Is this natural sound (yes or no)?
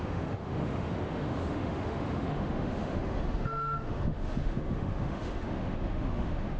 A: no